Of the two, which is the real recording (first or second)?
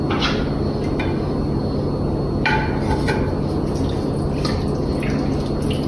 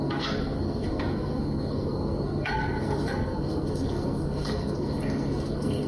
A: first